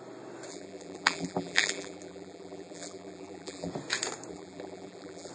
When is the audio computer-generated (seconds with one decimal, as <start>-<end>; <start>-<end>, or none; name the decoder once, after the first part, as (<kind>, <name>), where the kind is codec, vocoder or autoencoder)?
0.5-3.7 (vocoder, BigVGAN v2); 4.3-5.3